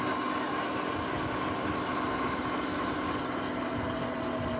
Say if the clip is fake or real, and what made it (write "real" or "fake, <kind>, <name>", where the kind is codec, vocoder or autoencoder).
real